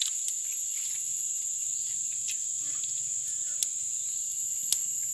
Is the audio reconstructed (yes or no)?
no